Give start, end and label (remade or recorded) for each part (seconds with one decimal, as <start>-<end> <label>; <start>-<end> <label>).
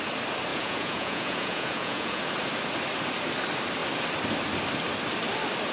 0.0-0.5 recorded; 0.5-2.2 remade; 2.2-5.7 recorded